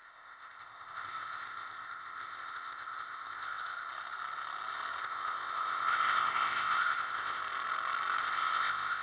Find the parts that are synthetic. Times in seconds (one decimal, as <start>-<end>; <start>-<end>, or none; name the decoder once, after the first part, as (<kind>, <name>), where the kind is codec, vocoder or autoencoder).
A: 0.0-3.9 (codec, ZipCodec); 5.0-7.4; 8.2-9.0